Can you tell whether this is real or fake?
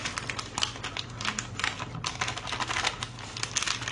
real